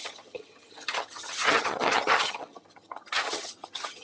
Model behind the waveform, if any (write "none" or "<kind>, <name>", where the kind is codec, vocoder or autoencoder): vocoder, HiFi-GAN